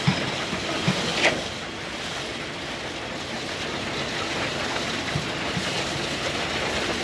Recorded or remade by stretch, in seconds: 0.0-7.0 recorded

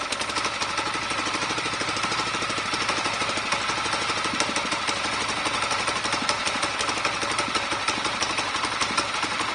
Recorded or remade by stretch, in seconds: 0.0-9.5 remade

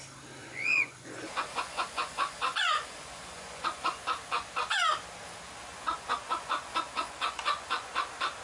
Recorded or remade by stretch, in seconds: 0.0-0.4 recorded; 0.4-4.0 remade; 4.0-5.7 recorded; 5.7-7.9 remade; 7.9-8.4 recorded